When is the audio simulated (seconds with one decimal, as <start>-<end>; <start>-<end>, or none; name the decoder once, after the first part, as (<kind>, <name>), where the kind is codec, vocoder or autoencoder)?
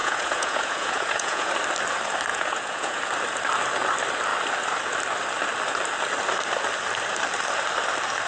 0.0-1.5 (vocoder, Vocos); 2.3-3.0